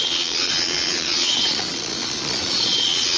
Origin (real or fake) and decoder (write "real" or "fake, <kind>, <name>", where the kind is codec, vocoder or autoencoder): fake, vocoder, Vocos